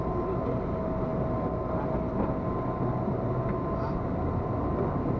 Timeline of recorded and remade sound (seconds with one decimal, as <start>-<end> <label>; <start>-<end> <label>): 0.0-5.2 recorded